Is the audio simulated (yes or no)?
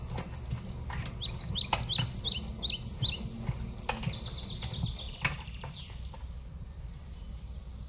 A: no